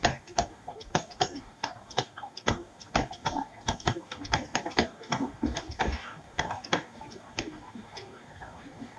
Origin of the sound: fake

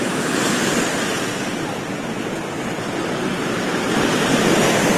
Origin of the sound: real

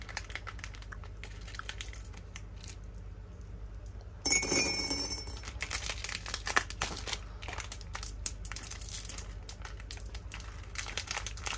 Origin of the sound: real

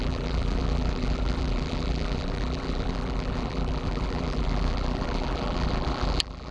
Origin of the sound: fake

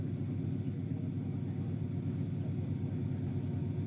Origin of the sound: real